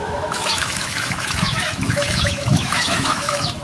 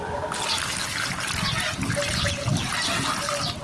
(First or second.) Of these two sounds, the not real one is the first